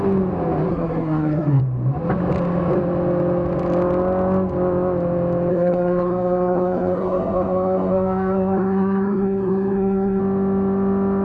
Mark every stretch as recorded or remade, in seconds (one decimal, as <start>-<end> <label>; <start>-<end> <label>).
0.0-0.7 recorded; 0.7-1.6 remade; 1.6-5.5 recorded; 5.5-10.2 remade; 10.2-11.2 recorded